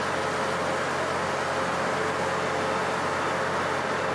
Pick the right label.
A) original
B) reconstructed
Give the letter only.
A